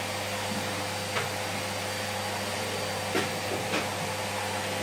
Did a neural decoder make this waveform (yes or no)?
no